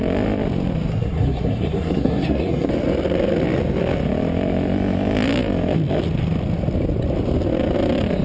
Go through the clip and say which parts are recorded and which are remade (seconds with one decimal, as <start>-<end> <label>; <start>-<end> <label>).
0.0-0.9 recorded; 0.9-2.7 remade; 2.7-8.2 recorded